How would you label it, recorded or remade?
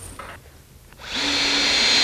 recorded